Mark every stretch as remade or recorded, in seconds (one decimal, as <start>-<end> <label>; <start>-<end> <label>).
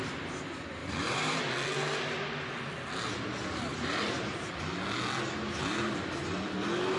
0.0-0.8 recorded; 0.8-1.4 remade; 1.4-3.7 recorded; 3.7-4.5 remade; 4.5-7.0 recorded